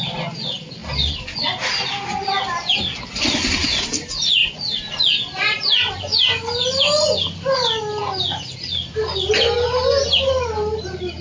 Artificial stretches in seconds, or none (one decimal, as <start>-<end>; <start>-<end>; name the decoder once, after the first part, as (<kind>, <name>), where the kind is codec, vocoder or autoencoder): none